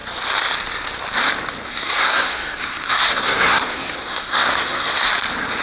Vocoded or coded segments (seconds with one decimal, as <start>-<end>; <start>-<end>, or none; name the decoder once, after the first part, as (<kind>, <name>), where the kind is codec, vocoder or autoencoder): 1.7-5.1 (codec, SNAC)